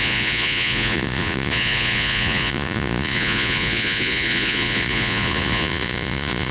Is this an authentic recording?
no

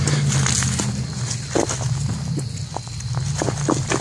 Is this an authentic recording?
yes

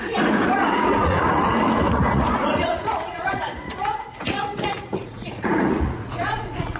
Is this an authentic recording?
no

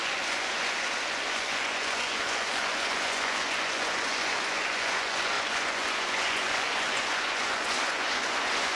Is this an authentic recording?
no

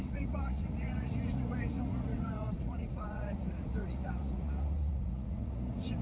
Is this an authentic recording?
no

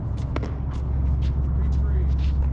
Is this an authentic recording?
yes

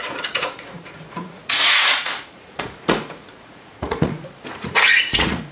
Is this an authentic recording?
no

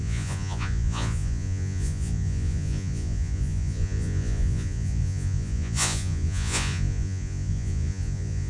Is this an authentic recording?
no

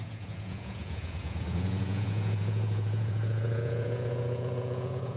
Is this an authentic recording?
no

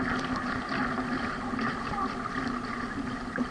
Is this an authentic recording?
yes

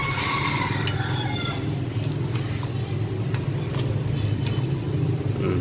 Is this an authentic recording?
yes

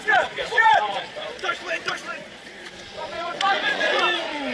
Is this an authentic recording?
no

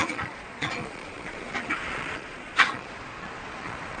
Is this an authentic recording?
no